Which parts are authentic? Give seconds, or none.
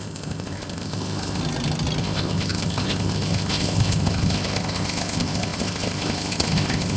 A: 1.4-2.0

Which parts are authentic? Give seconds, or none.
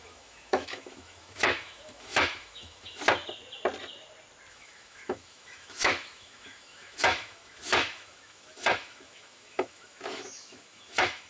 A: 3.0-4.5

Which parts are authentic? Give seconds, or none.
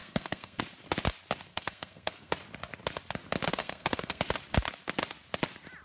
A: 0.6-1.5; 2.3-3.5; 4.2-5.8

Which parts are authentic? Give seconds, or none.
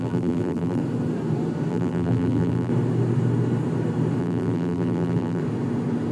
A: 0.8-1.7; 2.7-4.2; 5.4-6.1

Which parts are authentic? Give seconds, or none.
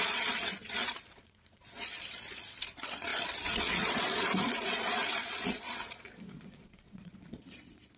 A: none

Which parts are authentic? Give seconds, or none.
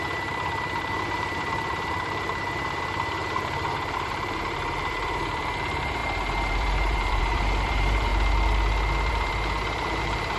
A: 8.1-9.1